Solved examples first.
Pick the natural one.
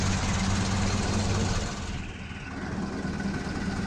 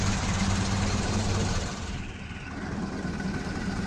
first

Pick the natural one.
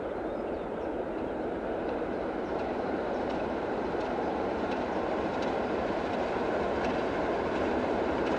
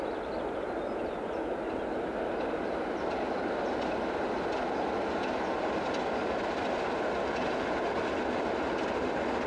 second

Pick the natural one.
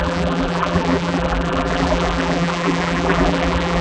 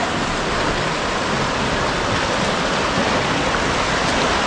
second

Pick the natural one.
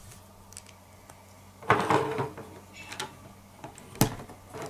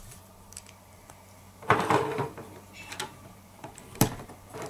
first